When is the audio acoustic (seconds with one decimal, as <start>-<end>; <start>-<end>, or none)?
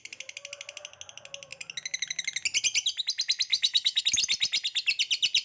0.0-3.5; 4.0-5.4